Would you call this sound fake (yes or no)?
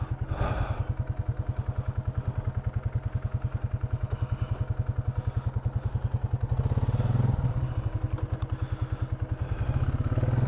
no